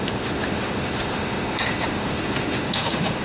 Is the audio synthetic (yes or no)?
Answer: yes